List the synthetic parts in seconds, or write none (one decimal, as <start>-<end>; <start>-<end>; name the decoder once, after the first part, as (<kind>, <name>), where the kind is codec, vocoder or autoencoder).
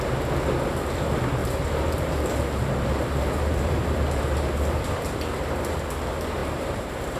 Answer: 1.4-4.8 (vocoder, BigVGAN v2); 6.4-7.2